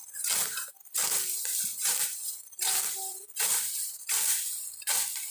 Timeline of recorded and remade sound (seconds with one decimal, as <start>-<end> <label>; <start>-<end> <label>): 0.0-0.8 remade; 0.8-1.7 recorded; 1.7-4.7 remade; 4.7-5.3 recorded